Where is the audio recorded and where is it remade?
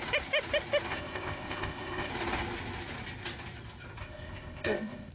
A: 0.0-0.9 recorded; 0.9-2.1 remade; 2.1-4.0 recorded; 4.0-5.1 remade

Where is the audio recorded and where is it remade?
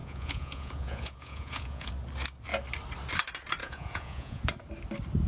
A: 0.0-1.9 remade; 1.9-3.6 recorded; 3.6-4.4 remade; 4.4-5.3 recorded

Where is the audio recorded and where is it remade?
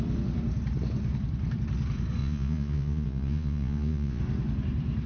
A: 0.0-2.2 recorded; 2.2-4.2 remade; 4.2-5.1 recorded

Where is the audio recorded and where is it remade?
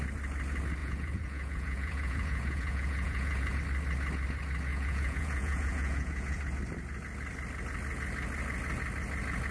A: 0.0-0.8 recorded; 0.8-3.6 remade; 3.6-4.7 recorded; 4.7-6.4 remade; 6.4-9.5 recorded